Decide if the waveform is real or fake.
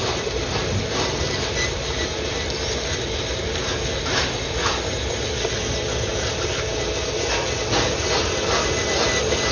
real